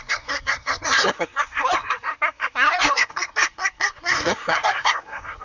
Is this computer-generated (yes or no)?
yes